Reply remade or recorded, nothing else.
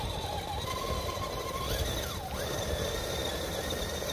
recorded